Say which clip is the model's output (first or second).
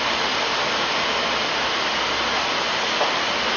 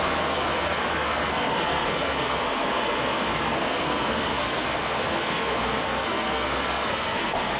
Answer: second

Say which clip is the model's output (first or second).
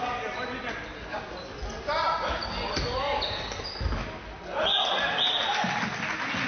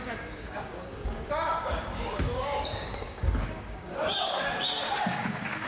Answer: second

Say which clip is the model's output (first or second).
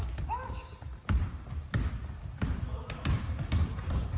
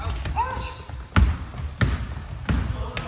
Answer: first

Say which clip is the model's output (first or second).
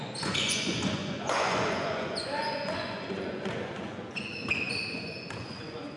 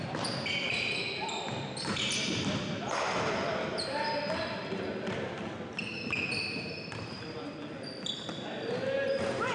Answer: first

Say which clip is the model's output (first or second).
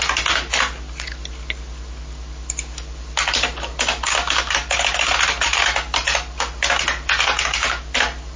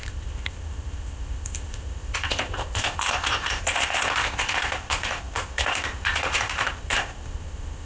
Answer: second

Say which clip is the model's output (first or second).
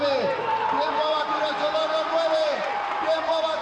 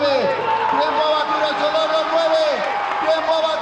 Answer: first